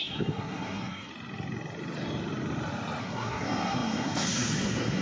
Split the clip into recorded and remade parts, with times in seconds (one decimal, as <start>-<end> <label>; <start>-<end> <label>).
0.0-1.1 remade; 1.1-3.0 recorded; 3.0-5.0 remade